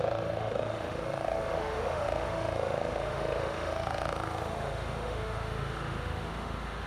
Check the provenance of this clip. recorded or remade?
remade